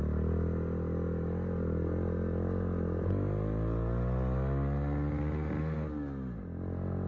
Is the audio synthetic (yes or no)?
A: no